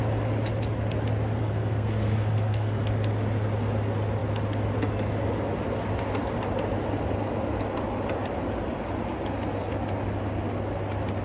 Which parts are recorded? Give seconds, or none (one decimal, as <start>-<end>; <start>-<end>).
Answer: 0.0-1.4; 2.8-11.2